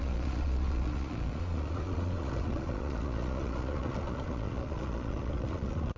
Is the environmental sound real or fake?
fake